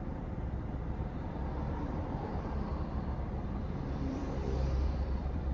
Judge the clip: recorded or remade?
remade